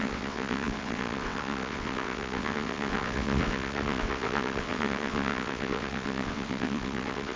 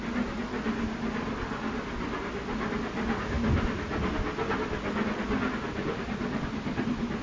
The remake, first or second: first